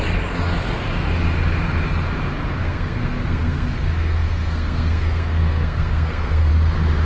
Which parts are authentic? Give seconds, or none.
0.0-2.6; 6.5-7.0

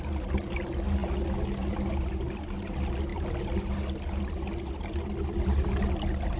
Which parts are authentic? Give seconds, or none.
0.0-6.4

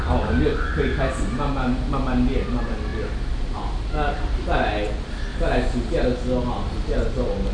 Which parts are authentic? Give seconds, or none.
0.0-7.5

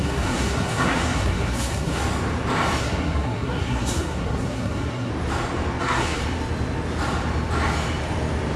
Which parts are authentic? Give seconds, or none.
2.0-2.8; 5.1-5.8; 6.2-8.6